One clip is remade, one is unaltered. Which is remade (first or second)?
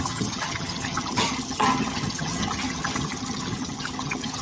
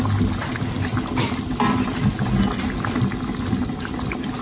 first